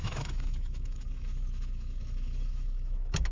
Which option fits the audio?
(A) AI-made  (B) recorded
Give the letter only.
A